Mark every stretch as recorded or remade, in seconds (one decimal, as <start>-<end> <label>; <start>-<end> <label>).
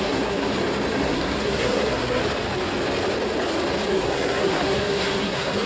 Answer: 0.0-0.5 remade; 0.5-1.0 recorded; 1.0-2.2 remade; 2.2-3.9 recorded; 3.9-5.7 remade